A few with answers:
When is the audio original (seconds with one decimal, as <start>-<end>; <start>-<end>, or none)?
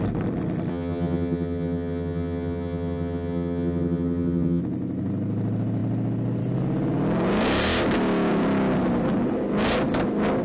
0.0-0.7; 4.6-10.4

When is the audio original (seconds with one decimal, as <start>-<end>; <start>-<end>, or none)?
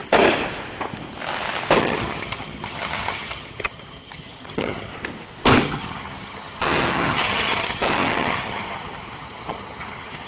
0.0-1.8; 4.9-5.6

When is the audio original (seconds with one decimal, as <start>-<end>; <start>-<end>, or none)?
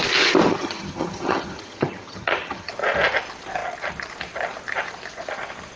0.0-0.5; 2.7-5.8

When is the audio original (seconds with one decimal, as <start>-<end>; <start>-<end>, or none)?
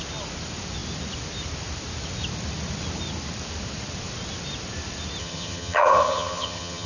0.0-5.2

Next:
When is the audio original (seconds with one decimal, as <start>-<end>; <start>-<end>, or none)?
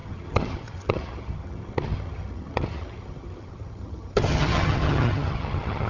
none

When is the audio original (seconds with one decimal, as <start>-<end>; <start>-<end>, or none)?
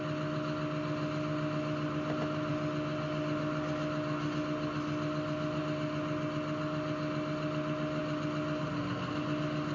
0.0-9.7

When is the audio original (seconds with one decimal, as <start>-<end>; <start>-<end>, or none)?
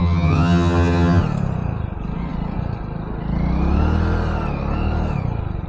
1.2-5.7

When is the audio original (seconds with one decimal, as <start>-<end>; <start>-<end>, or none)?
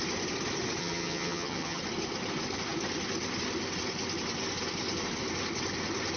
0.0-0.8; 1.8-6.2